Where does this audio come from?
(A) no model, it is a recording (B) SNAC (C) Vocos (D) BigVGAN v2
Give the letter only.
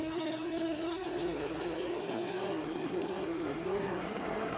B